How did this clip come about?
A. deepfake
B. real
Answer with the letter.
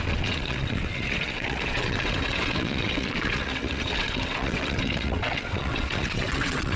A